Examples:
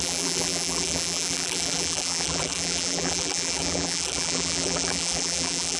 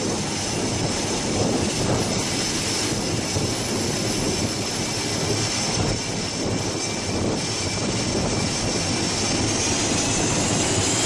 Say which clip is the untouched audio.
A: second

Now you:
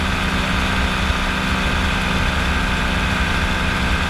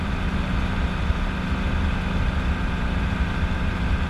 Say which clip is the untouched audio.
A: first